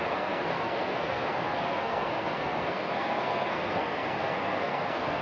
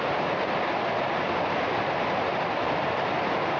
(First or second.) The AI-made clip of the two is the first